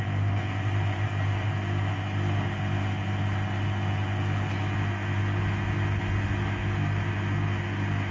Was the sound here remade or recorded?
recorded